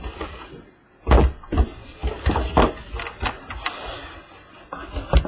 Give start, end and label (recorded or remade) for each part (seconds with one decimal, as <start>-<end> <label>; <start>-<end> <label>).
0.0-5.3 recorded